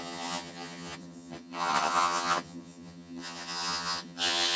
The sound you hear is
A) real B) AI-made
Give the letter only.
B